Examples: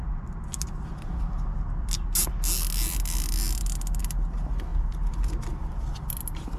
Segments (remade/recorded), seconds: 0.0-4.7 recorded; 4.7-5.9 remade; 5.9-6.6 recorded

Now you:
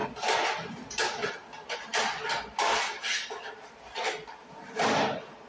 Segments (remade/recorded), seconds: 0.0-5.5 remade

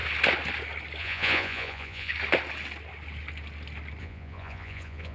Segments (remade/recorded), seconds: 0.0-1.0 recorded; 1.0-2.1 remade; 2.1-4.0 recorded; 4.0-5.1 remade

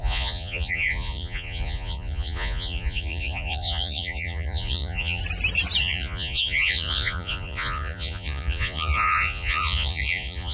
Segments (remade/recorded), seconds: 0.0-5.2 remade; 5.2-5.8 recorded; 5.8-10.5 remade

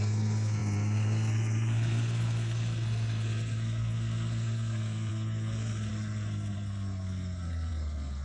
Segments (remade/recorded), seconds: 0.0-8.2 remade